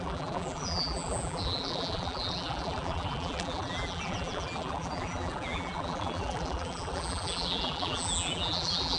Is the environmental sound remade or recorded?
remade